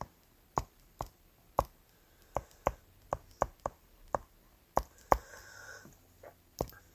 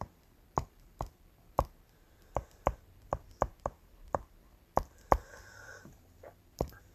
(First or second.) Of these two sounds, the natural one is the first